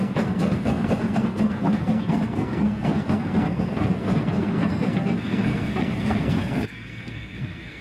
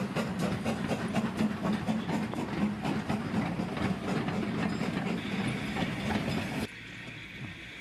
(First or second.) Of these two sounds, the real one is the second